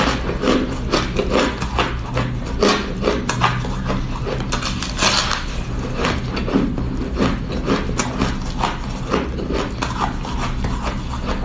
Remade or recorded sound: recorded